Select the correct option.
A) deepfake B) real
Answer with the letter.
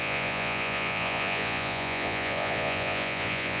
A